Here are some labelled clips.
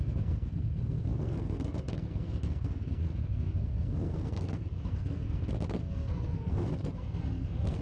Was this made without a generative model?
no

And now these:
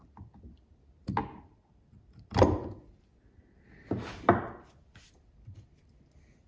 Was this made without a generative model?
yes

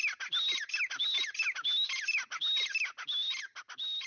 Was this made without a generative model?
yes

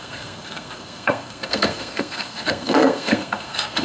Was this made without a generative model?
no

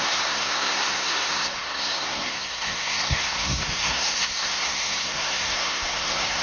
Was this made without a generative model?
no